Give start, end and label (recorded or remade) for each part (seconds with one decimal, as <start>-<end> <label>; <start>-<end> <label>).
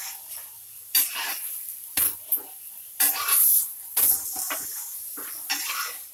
0.0-6.1 recorded